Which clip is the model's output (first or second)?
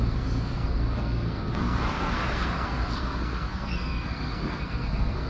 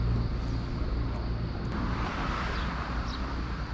first